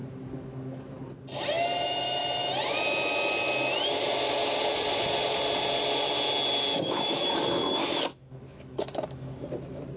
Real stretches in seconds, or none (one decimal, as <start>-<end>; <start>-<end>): 1.0-6.7; 9.3-10.0